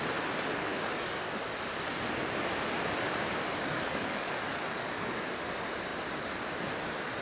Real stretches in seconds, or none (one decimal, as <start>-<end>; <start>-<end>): 0.0-0.7; 1.3-3.6; 5.2-7.2